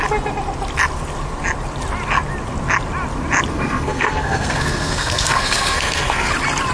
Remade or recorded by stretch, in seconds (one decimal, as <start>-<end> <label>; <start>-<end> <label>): 0.0-3.5 recorded; 3.5-6.3 remade; 6.3-6.7 recorded